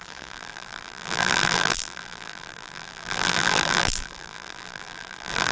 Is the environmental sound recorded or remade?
remade